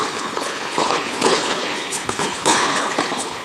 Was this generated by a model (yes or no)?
yes